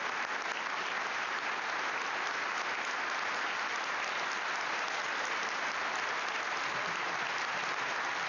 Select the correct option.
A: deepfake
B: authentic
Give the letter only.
B